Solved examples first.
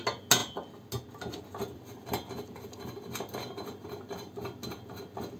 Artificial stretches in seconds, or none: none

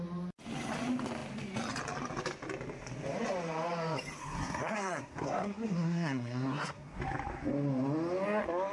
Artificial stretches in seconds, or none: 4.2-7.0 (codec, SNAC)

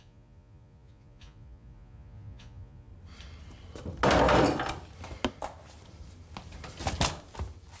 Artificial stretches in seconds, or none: 0.0-2.9 (vocoder, Vocos)

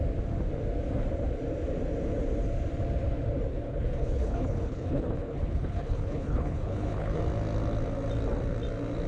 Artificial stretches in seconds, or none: 3.5-7.2 (codec, HILCodec)

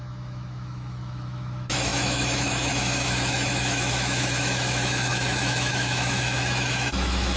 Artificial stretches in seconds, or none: 0.0-7.4 (autoencoder, DAC-VAE)